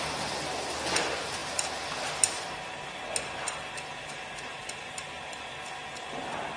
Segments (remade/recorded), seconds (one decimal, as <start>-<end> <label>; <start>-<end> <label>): 0.0-6.6 recorded